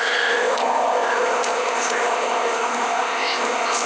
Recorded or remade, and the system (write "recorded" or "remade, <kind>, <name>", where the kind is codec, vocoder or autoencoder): remade, codec, ZipCodec